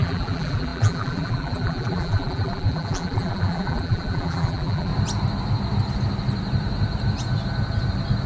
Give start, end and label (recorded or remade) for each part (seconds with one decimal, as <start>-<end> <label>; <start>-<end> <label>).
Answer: 0.0-4.9 remade; 4.9-8.3 recorded